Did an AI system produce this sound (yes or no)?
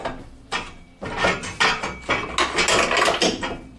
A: no